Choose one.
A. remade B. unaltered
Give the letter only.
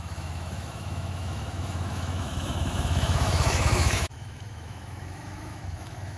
A